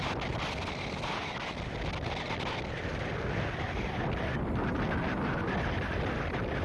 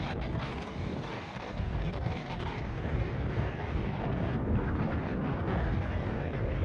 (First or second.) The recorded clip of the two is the first